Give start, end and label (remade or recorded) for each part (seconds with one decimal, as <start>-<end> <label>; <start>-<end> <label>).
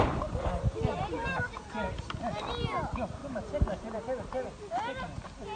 0.0-3.2 recorded; 3.2-4.0 remade; 4.0-5.6 recorded